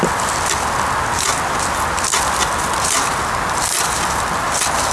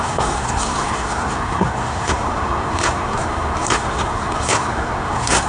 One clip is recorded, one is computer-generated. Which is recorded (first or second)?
first